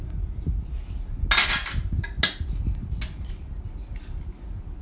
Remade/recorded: recorded